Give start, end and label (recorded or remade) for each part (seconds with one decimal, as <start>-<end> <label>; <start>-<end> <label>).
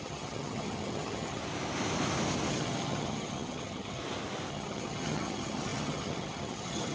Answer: 0.0-1.4 remade; 1.4-2.5 recorded; 2.5-4.0 remade; 4.0-4.5 recorded; 4.5-6.9 remade